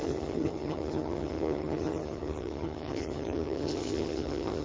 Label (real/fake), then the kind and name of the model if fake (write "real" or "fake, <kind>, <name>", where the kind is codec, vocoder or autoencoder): fake, vocoder, HiFi-GAN